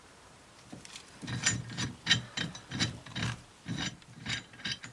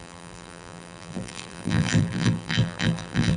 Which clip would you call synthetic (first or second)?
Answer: second